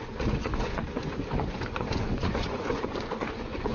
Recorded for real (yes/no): no